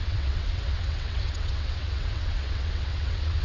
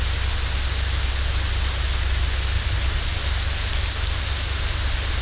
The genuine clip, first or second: second